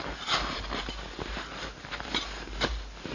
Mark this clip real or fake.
real